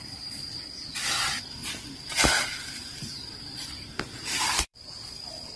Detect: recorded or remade remade